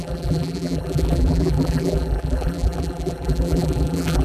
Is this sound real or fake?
fake